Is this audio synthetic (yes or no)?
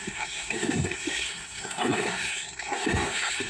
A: yes